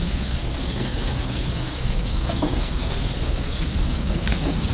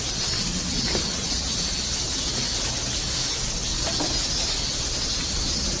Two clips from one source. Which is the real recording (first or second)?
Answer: second